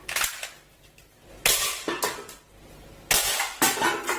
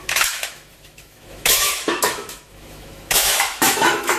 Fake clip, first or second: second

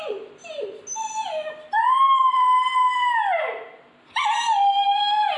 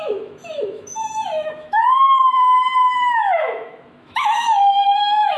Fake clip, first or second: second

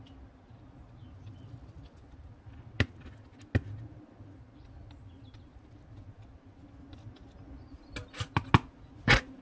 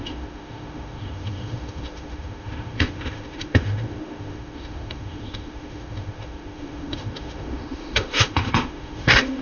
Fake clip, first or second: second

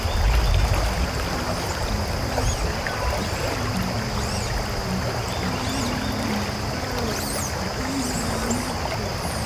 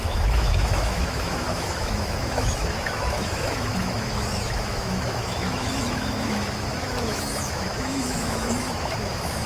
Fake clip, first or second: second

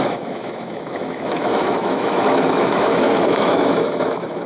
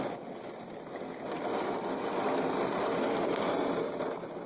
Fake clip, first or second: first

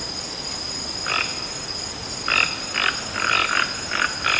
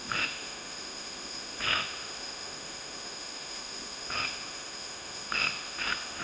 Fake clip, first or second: second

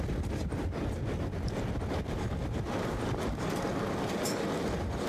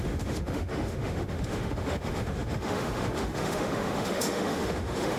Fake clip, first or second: second